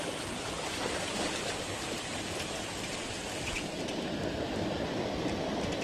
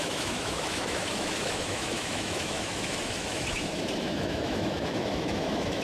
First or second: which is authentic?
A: first